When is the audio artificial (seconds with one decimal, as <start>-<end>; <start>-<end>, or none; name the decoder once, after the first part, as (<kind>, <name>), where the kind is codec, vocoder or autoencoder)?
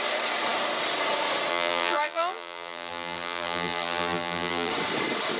1.5-4.7 (vocoder, BigVGAN v2)